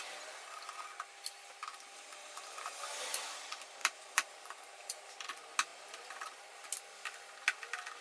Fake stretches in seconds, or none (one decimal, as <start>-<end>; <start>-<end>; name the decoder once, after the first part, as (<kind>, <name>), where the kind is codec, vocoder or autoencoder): 1.6-2.8 (vocoder, BigVGAN v2); 3.8-5.3